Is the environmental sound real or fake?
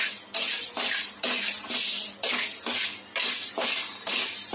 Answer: real